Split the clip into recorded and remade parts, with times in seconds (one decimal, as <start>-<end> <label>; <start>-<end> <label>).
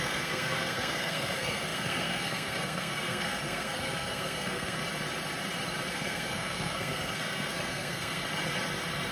0.0-4.8 remade; 4.8-5.9 recorded; 5.9-8.2 remade; 8.2-9.1 recorded